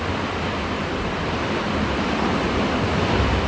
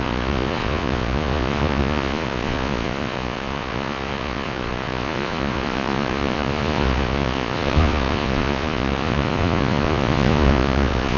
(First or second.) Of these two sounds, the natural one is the first